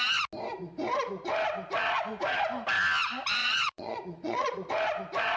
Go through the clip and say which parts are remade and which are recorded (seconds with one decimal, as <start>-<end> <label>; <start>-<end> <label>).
0.0-3.4 recorded; 3.4-4.7 remade; 4.7-5.4 recorded